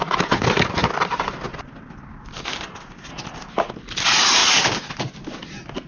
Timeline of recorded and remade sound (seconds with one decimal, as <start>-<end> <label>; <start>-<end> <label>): 0.0-0.8 recorded; 0.8-1.7 remade; 1.7-4.4 recorded; 4.4-5.0 remade; 5.0-5.9 recorded